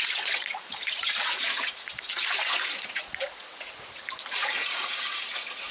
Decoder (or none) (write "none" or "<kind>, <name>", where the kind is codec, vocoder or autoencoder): vocoder, Vocos